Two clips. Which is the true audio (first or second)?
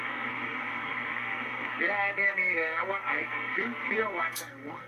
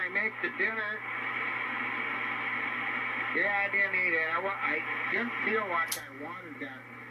second